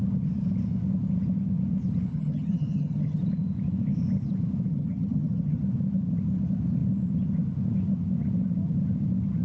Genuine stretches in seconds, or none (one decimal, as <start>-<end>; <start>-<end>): 0.0-2.1; 3.2-4.7; 5.6-9.4